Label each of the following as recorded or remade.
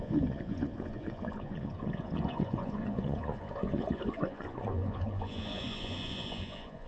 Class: remade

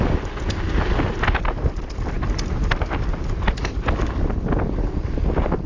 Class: recorded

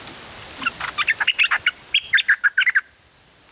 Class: recorded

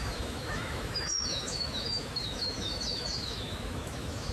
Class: remade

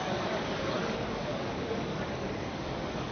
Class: remade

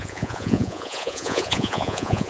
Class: remade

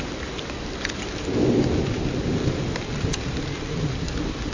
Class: recorded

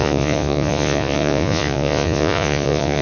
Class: remade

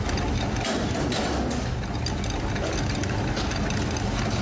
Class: recorded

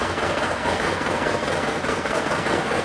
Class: remade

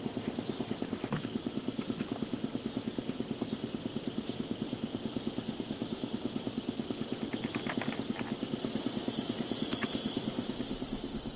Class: recorded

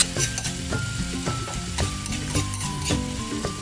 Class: recorded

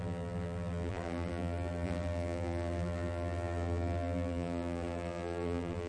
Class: remade